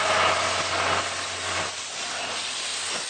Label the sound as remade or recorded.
recorded